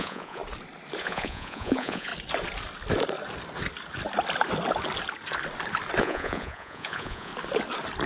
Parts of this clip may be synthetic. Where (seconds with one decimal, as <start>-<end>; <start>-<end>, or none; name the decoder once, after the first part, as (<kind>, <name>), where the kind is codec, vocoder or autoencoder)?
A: 0.0-0.4 (vocoder, Vocos); 1.0-2.1; 6.0-7.3